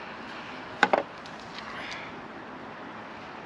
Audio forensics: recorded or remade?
recorded